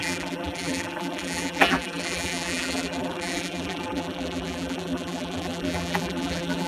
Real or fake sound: fake